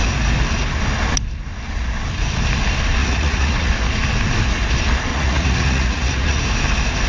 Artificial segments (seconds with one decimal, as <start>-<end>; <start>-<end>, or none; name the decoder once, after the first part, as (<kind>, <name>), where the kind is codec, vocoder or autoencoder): 3.0-3.7 (vocoder, Vocos); 5.1-6.4